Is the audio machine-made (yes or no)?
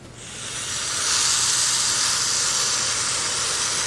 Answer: no